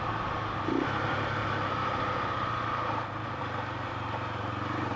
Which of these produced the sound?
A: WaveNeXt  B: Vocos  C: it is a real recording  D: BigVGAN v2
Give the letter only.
D